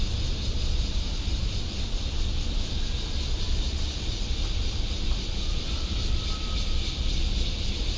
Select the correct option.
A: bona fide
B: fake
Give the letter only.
A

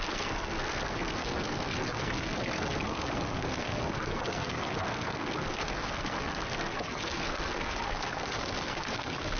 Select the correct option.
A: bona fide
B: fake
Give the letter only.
B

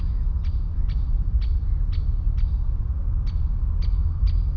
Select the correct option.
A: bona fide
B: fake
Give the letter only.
A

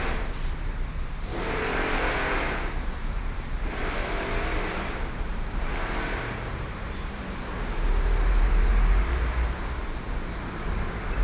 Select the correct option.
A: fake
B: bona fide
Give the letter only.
A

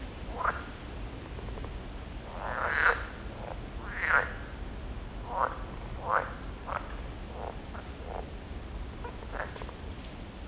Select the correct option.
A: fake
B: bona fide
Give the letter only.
B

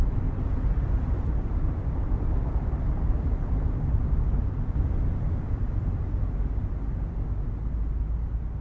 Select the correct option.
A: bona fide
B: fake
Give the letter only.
A